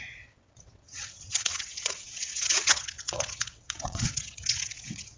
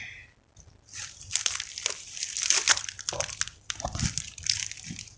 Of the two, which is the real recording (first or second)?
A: second